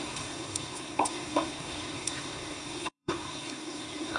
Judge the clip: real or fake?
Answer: fake